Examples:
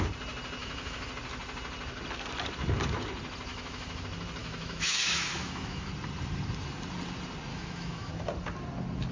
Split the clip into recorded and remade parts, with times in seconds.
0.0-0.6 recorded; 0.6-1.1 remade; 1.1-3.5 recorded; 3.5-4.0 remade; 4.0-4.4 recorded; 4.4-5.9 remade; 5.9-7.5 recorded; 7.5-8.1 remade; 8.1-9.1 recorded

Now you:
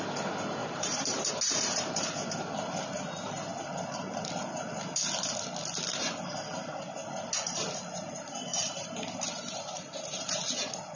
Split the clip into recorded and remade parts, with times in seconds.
0.0-0.6 recorded; 0.6-1.3 remade; 1.3-8.5 recorded; 8.5-10.4 remade; 10.4-11.0 recorded